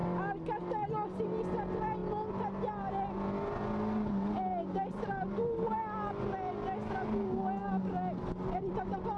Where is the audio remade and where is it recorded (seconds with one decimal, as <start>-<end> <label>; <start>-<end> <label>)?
0.0-9.2 recorded